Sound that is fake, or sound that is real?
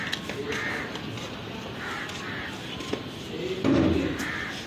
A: real